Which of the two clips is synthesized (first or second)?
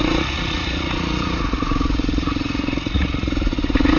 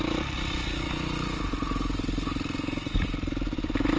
first